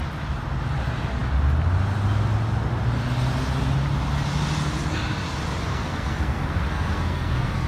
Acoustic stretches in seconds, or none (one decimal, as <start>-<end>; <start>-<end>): 0.0-5.7